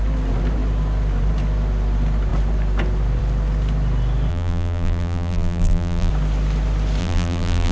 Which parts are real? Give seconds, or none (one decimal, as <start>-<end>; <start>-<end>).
0.0-4.3; 6.1-7.0